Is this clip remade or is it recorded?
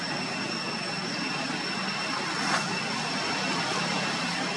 recorded